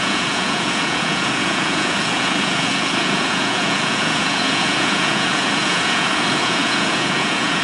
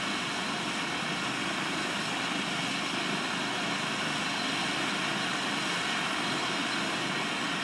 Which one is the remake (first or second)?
first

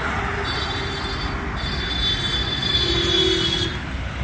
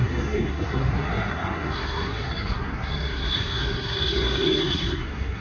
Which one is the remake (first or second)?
second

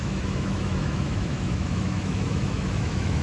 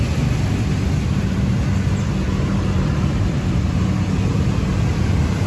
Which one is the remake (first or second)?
first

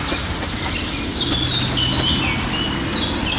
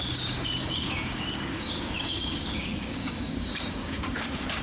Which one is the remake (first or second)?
second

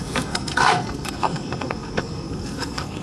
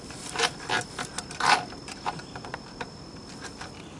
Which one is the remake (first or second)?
first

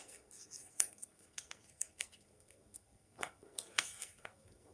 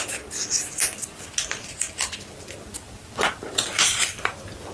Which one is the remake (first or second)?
first